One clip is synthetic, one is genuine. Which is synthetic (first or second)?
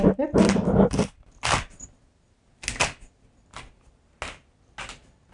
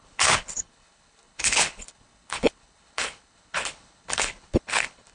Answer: second